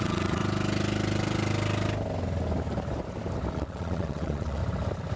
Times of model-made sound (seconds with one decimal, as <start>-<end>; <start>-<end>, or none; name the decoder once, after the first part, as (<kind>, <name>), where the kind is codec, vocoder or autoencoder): 0.0-0.4 (vocoder, Vocos); 3.5-4.6